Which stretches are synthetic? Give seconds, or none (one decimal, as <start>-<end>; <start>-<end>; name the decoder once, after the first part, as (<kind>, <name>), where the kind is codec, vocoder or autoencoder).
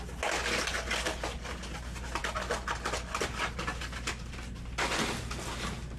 none